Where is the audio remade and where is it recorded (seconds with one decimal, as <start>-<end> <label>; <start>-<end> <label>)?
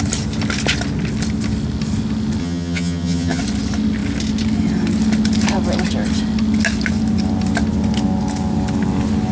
0.0-2.4 recorded; 2.4-3.4 remade; 3.4-9.3 recorded